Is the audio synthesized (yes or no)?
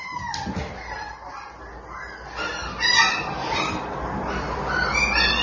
no